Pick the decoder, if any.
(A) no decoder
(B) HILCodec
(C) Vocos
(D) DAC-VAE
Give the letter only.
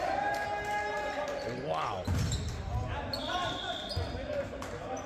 A